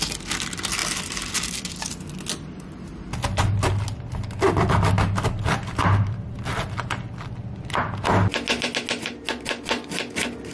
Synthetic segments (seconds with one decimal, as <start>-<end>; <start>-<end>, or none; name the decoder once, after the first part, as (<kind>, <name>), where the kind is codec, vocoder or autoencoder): none